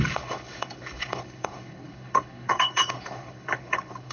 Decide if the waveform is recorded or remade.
remade